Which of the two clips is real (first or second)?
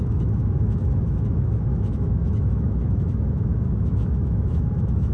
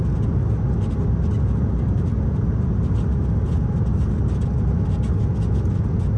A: second